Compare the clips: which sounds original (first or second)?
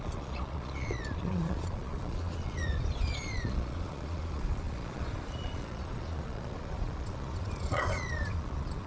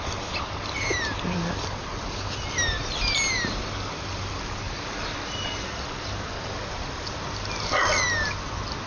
second